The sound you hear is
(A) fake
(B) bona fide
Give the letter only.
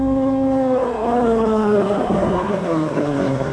A